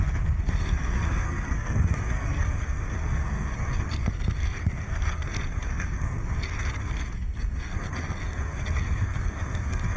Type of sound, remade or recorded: remade